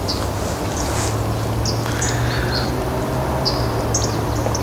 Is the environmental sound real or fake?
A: real